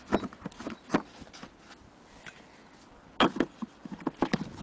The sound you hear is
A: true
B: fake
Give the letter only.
A